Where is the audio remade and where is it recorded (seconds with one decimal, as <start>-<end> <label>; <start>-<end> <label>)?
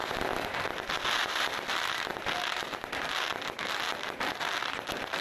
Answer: 0.0-5.2 recorded